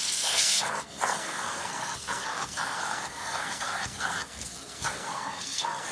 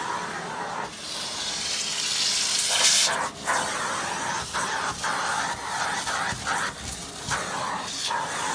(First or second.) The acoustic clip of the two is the second